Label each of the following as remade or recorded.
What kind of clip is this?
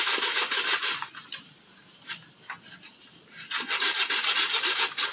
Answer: remade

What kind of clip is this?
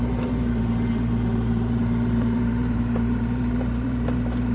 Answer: remade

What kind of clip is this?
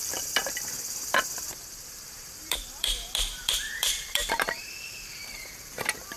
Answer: remade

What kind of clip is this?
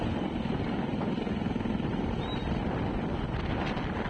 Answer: recorded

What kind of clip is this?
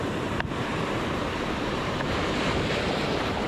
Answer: remade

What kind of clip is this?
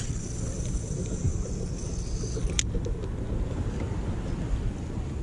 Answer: recorded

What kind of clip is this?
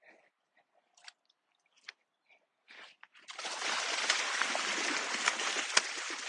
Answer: recorded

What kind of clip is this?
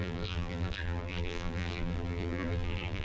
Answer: remade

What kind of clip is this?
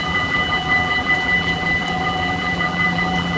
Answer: remade